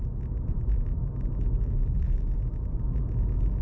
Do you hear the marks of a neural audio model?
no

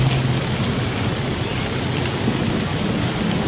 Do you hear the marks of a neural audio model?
no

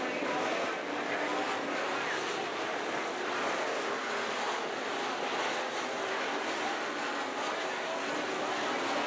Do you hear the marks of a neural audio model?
no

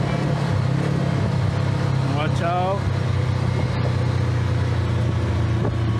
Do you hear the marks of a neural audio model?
no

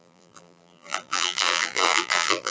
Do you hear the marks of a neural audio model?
yes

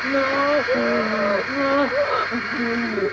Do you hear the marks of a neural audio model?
no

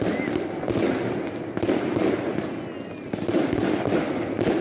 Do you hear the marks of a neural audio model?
no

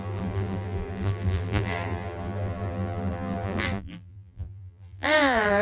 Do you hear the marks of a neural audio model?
yes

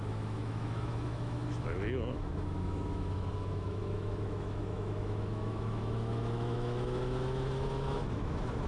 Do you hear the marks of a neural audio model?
yes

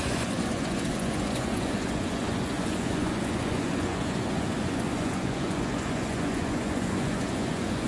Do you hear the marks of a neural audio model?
yes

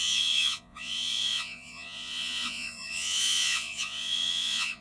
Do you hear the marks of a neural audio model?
yes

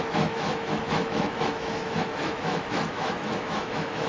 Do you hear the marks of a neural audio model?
yes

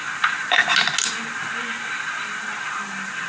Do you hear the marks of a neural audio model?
no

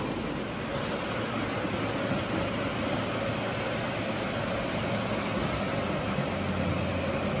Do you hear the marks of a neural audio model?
no